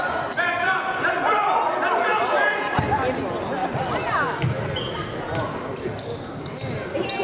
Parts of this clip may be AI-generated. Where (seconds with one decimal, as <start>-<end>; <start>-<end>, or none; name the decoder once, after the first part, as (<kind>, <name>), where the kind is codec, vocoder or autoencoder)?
none